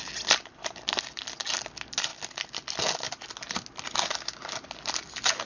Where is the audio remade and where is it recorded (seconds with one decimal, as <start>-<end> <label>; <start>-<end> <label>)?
0.0-5.5 recorded